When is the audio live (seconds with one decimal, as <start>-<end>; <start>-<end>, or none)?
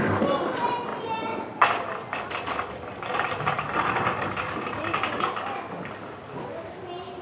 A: 0.0-7.2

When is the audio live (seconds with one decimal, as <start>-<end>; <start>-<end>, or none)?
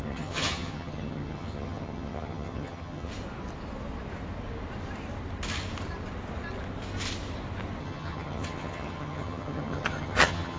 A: 3.1-7.8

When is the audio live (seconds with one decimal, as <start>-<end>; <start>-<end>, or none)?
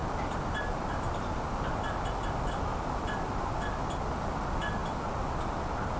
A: 0.0-6.0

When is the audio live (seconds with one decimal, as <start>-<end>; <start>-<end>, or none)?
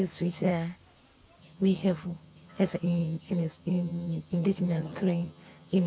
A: 0.5-1.4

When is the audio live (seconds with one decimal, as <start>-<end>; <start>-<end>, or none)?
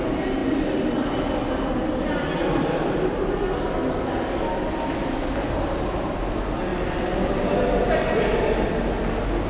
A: 0.0-9.5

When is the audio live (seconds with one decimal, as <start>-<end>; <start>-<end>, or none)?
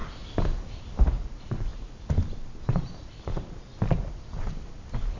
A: 0.0-5.2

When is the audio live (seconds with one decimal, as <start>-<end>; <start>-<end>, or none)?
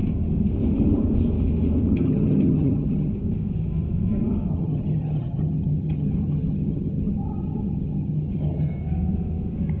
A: 0.0-1.9; 3.1-4.5; 8.7-9.8